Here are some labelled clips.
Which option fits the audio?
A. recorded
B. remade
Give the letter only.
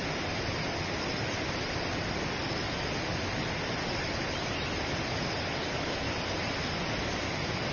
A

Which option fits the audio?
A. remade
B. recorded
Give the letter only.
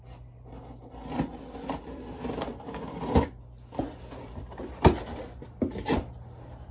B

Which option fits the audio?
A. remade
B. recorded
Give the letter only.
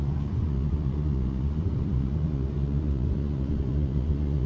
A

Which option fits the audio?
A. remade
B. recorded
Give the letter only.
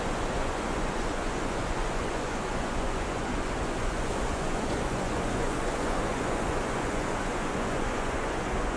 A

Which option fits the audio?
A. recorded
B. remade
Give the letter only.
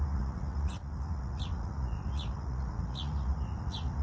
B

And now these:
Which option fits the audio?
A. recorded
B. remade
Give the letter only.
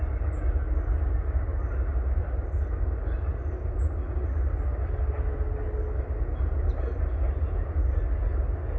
A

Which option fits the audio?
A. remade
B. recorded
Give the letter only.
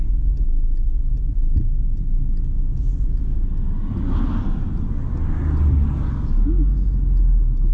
B